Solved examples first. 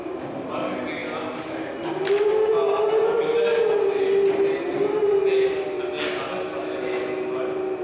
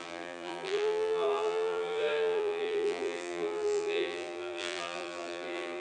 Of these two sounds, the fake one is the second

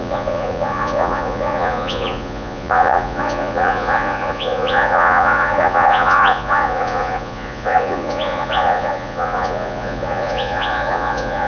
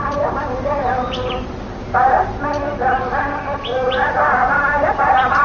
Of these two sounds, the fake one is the first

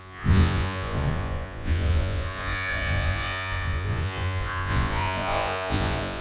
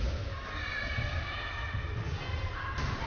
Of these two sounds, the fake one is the first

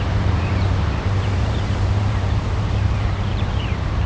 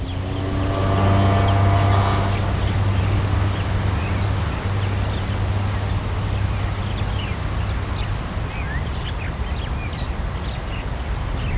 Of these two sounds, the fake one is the first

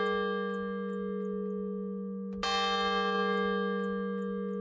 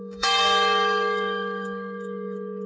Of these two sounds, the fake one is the second